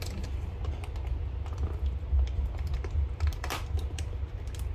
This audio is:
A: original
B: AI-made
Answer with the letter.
A